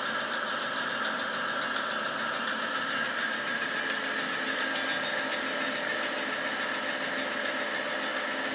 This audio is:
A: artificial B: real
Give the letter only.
B